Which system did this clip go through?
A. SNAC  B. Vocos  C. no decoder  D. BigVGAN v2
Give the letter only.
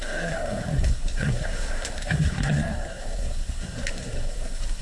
A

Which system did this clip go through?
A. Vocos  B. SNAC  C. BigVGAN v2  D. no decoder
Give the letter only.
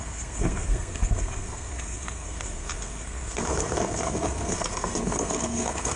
B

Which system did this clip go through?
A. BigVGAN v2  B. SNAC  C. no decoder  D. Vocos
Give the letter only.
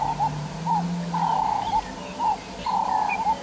C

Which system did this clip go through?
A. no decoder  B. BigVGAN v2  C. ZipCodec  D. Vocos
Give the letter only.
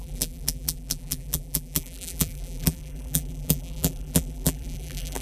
B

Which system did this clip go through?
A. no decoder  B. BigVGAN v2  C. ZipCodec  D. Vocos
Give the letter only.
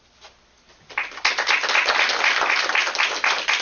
A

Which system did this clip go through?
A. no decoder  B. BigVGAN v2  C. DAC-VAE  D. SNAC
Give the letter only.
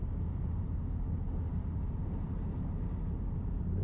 A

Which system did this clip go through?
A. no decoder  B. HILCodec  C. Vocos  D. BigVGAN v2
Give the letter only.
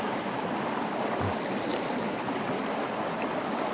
A